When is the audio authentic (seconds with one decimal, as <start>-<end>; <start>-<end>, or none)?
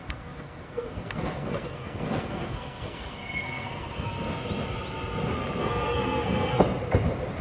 4.1-5.6; 6.6-7.4